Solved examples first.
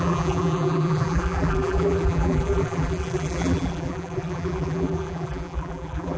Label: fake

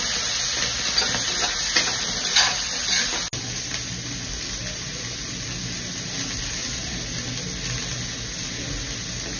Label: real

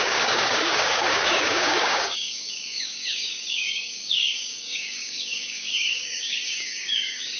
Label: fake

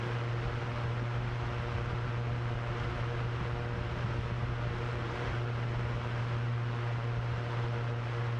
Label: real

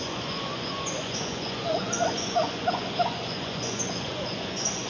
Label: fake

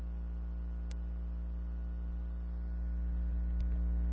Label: real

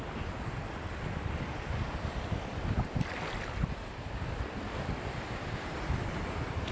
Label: real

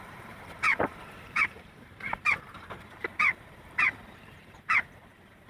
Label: fake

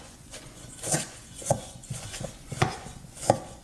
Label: fake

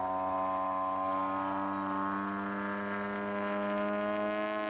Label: real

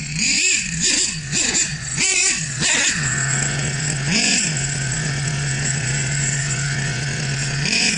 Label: fake